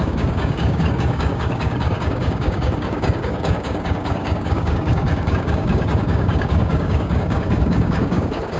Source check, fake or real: fake